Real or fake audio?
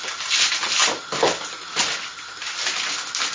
real